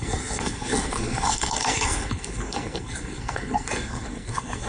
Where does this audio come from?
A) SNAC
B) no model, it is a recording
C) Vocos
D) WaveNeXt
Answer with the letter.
A